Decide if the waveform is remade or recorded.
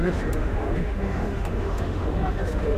remade